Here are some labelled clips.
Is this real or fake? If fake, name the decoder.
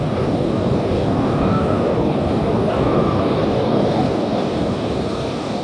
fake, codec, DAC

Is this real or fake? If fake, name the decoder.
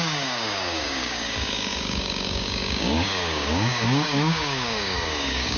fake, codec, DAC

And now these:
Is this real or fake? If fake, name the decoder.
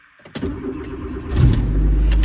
real